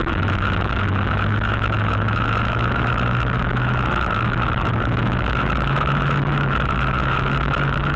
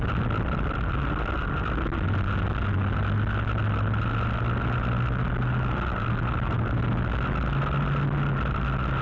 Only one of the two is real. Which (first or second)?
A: second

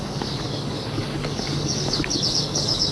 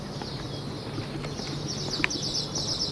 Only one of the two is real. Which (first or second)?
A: second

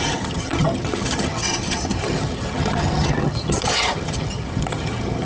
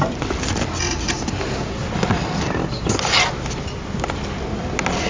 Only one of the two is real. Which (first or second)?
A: second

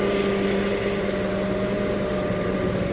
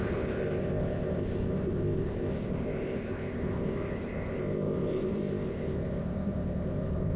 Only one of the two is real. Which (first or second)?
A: first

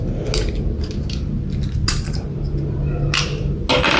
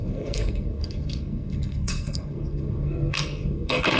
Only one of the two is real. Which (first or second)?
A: first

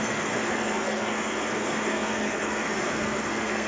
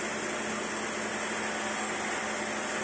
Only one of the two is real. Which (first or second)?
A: second